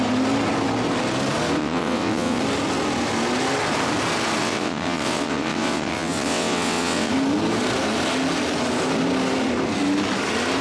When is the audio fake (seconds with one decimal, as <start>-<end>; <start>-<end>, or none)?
1.6-2.4; 4.4-7.1